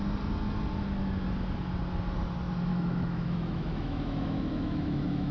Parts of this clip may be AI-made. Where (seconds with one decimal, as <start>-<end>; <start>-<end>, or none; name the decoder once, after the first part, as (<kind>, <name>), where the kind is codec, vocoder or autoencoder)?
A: 2.7-5.3 (autoencoder, DAC-VAE)